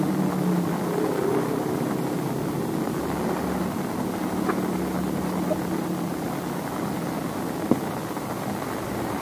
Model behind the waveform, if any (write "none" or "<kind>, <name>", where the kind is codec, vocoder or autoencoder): none